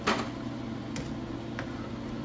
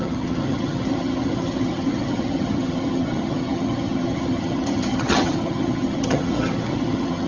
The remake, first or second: second